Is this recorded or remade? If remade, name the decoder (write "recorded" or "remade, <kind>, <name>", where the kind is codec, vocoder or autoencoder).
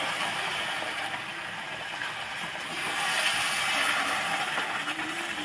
recorded